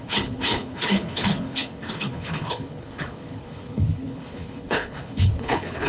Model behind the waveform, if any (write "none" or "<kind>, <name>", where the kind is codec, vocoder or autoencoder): codec, HILCodec